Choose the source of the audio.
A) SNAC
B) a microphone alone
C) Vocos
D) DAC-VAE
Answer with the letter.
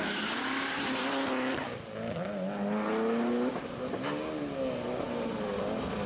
B